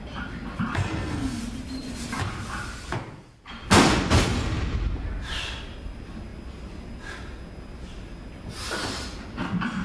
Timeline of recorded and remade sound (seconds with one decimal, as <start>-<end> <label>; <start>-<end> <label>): 0.0-0.8 recorded; 0.8-1.4 remade; 1.4-9.8 recorded